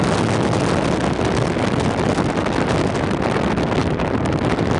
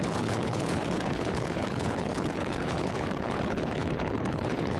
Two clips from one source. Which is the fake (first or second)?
second